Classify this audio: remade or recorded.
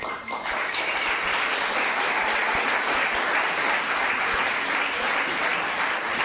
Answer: recorded